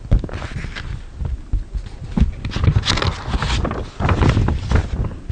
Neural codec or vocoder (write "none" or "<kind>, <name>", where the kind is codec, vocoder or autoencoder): none